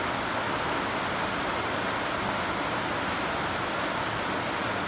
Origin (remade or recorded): recorded